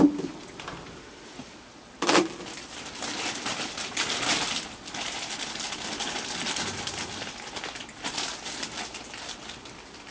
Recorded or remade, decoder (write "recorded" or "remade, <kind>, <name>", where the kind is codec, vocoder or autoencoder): recorded